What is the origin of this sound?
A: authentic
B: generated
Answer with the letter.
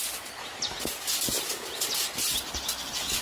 A